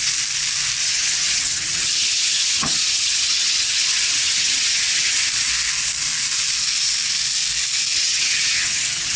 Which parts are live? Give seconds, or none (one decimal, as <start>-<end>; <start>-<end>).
0.0-0.8; 5.3-7.9